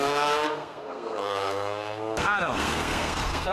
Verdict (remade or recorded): remade